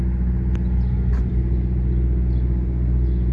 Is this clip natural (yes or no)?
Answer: yes